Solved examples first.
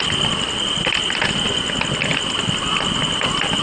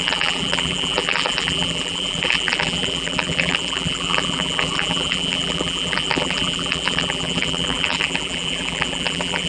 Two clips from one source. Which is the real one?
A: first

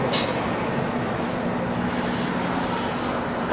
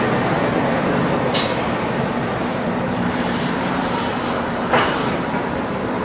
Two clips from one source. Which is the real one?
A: first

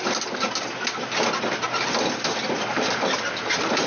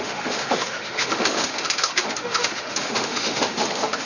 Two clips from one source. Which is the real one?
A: first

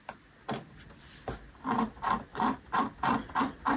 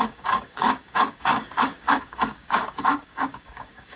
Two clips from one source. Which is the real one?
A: first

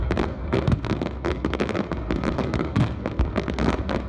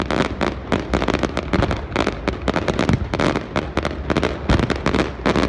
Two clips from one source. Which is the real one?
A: second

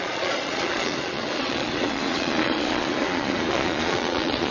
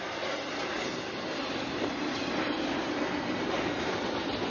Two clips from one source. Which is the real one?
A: second